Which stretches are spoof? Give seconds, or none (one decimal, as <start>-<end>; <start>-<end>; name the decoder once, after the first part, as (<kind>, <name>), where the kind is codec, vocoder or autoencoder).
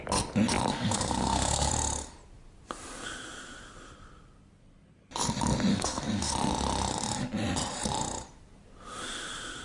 0.7-1.7 (codec, SNAC); 5.7-6.3